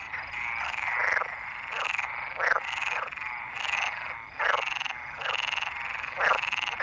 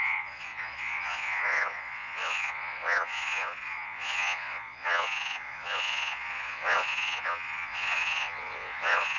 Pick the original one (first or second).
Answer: first